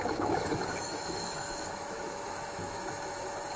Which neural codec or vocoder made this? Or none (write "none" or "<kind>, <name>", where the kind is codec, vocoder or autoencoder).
autoencoder, DAC-VAE